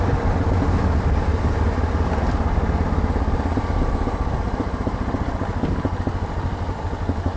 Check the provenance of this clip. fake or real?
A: real